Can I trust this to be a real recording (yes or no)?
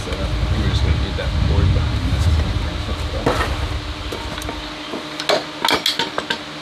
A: yes